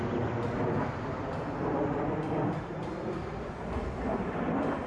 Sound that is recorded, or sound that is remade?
recorded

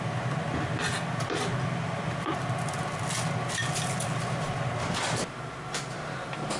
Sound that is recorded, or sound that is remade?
recorded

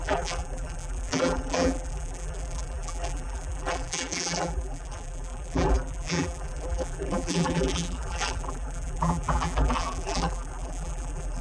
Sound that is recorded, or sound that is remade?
remade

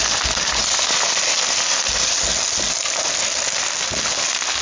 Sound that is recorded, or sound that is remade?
recorded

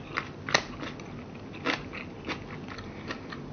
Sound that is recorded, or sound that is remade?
recorded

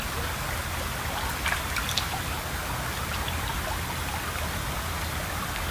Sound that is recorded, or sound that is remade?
recorded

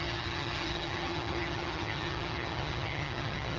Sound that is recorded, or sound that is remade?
remade